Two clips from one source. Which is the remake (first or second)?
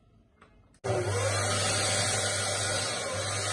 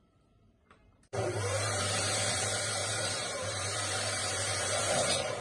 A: second